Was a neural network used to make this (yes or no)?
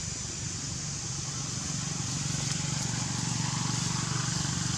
no